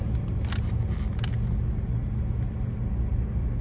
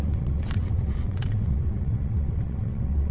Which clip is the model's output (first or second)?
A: second